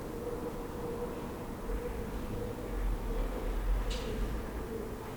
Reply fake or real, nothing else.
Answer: real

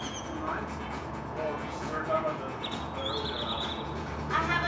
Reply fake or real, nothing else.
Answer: fake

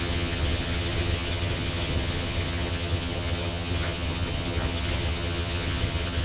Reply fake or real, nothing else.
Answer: fake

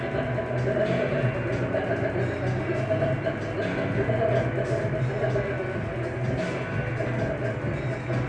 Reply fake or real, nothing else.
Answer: real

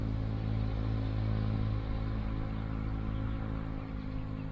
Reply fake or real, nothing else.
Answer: real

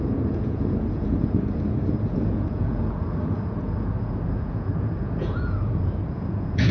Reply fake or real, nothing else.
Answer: fake